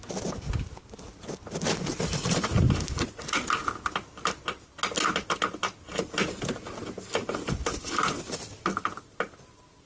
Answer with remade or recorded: recorded